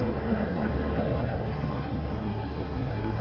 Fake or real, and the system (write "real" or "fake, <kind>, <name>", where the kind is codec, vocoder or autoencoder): fake, codec, SNAC